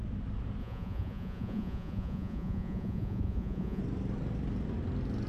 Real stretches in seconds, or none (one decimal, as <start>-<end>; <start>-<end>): 0.0-0.6; 3.8-5.3